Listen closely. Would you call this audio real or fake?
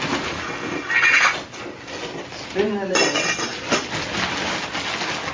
real